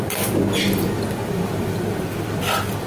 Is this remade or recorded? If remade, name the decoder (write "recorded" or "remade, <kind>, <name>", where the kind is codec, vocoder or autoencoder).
recorded